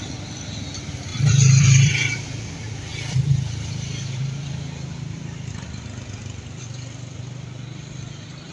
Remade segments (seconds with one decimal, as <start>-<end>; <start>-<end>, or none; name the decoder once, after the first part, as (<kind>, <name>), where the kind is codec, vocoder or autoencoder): 0.0-8.5 (vocoder, BigVGAN v2)